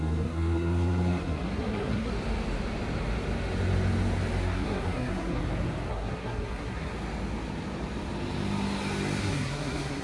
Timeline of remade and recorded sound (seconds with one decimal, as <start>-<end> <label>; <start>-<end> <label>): 0.0-2.1 remade; 2.1-4.4 recorded; 4.4-5.4 remade; 5.4-5.9 recorded; 5.9-6.9 remade; 6.9-9.2 recorded; 9.2-10.0 remade